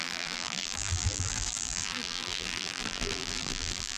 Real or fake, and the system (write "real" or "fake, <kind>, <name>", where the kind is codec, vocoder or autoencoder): fake, vocoder, BigVGAN v2